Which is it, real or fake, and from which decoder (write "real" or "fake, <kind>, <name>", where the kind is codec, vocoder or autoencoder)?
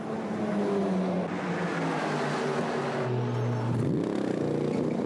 real